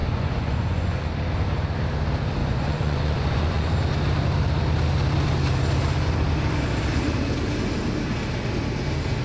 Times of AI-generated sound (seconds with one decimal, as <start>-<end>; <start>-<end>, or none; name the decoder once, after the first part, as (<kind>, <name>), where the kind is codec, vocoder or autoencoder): 0.0-1.1 (vocoder, Vocos); 2.4-3.7